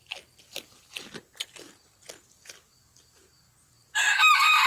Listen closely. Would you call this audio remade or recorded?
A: recorded